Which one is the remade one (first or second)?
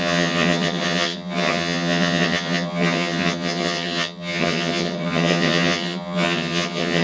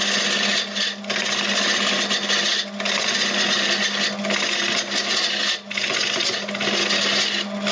first